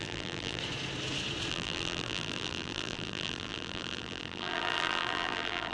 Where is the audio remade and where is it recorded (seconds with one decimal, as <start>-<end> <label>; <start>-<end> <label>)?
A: 0.0-0.6 remade; 0.6-1.5 recorded; 1.5-5.7 remade